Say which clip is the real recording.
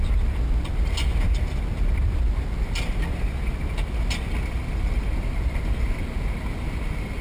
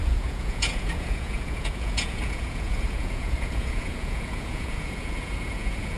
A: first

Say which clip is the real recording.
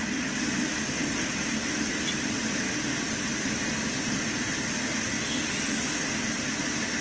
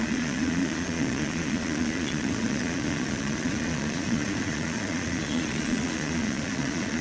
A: first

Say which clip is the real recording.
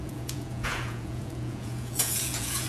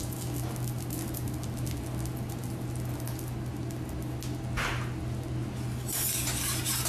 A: second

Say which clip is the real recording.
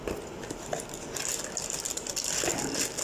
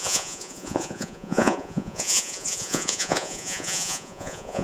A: first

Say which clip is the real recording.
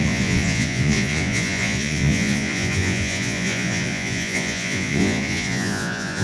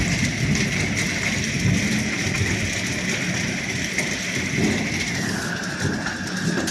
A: second